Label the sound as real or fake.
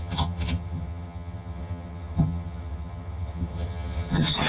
fake